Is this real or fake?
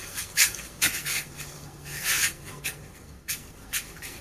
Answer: fake